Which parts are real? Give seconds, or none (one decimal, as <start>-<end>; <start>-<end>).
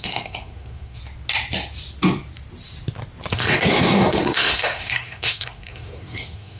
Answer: 1.0-3.3